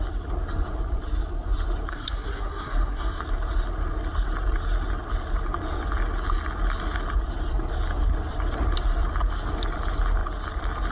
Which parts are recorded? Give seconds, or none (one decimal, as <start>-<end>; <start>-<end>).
0.0-1.9; 3.2-10.9

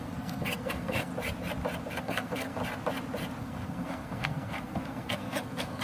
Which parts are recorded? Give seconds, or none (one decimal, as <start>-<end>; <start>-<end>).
1.1-2.0; 2.6-3.4

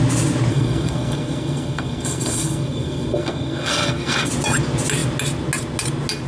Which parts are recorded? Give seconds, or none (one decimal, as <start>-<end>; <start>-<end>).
0.0-0.5; 4.3-6.3

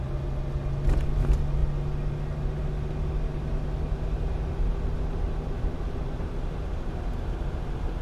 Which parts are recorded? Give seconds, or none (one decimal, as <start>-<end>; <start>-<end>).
0.0-8.0

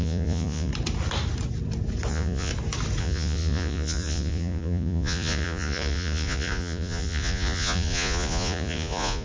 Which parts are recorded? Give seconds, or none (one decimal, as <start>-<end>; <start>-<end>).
0.7-2.1; 2.5-3.0

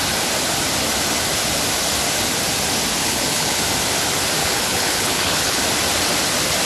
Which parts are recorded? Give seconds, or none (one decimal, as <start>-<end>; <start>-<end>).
0.0-3.0; 3.6-4.4; 5.6-6.7